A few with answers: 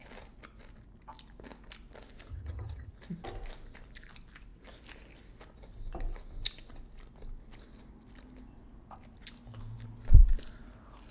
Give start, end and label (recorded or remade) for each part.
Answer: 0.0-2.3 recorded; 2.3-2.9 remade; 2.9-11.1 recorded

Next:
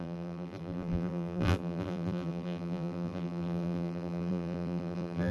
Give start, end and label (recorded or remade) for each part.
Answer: 0.0-5.3 remade

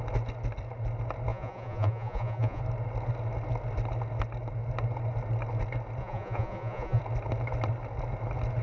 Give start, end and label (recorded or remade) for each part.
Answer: 0.0-1.3 recorded; 1.3-2.6 remade; 2.6-6.0 recorded; 6.0-7.0 remade; 7.0-8.6 recorded